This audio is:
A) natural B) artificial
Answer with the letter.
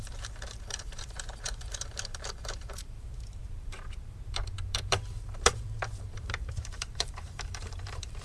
B